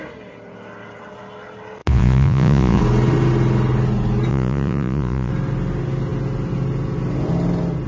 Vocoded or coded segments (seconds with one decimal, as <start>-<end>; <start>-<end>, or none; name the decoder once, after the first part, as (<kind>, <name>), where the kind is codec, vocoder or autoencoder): 1.8-2.8 (vocoder, Vocos); 4.3-5.3